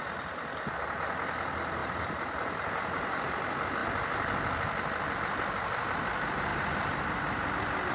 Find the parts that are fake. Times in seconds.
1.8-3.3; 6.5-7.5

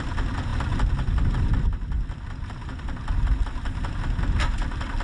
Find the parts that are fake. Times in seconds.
none

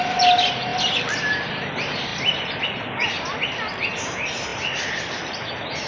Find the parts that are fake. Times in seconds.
0.7-1.7; 4.5-5.5